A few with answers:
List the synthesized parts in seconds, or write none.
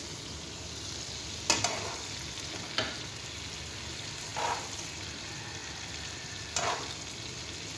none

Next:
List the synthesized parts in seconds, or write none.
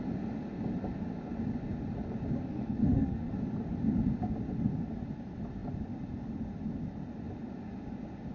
2.5-3.3 (codec, SNAC)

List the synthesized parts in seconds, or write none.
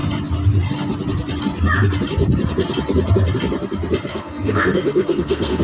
4.1-5.6 (codec, SNAC)